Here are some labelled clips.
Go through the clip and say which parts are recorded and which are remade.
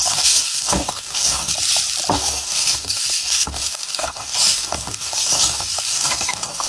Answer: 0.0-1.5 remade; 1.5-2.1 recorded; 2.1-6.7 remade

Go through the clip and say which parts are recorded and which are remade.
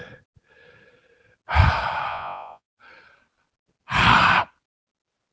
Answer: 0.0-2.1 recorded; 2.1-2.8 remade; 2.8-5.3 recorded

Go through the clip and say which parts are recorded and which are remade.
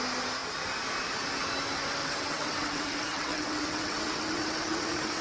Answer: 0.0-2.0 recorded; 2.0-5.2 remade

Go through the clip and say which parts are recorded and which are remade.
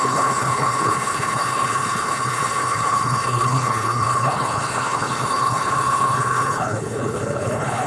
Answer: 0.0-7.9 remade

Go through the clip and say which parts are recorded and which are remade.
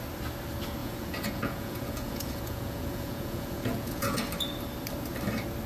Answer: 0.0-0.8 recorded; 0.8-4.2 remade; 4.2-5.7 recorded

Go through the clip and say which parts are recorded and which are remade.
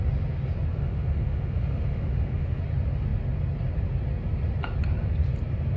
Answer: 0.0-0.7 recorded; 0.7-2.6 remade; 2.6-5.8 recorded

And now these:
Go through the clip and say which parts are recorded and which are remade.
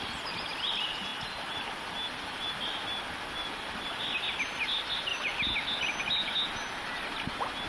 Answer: 0.0-7.7 recorded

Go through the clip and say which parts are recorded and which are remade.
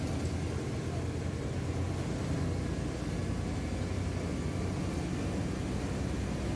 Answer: 0.0-6.6 recorded